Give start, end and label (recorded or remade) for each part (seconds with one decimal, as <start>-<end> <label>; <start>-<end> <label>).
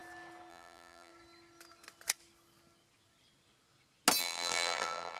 0.0-0.5 recorded; 0.5-1.1 remade; 1.1-4.2 recorded; 4.2-5.2 remade